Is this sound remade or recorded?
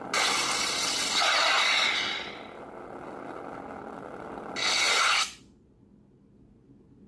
recorded